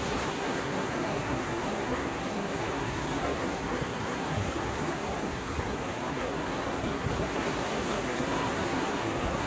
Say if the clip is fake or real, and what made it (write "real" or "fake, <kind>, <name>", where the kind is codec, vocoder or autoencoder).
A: fake, codec, SNAC